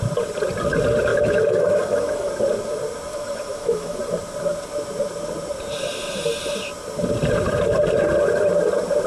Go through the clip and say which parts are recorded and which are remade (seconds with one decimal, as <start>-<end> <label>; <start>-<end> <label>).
0.0-1.1 recorded; 1.1-2.3 remade; 2.3-3.1 recorded; 3.1-4.0 remade; 4.0-9.1 recorded